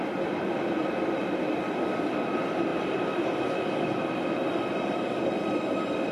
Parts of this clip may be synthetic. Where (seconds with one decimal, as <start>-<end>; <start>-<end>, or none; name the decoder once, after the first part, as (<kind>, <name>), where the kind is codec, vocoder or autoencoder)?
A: 0.8-1.4 (vocoder, BigVGAN v2); 2.7-6.1